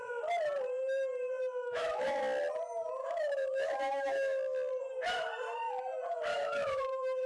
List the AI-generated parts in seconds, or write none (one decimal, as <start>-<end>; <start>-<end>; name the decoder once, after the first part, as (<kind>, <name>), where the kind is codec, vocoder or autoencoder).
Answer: 1.6-2.2 (autoencoder, DAC-VAE); 3.0-4.7; 6.3-7.3